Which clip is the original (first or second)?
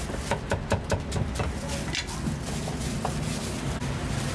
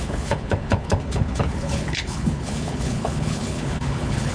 first